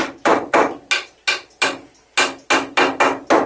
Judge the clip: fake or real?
real